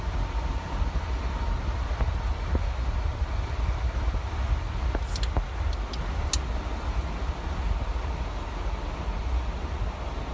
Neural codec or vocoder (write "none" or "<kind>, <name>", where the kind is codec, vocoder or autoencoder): none